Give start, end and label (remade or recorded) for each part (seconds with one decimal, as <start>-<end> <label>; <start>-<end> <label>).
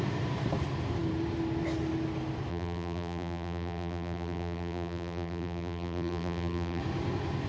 0.0-2.5 recorded; 2.5-6.8 remade; 6.8-7.5 recorded